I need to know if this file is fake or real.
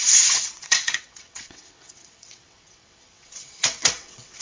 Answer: fake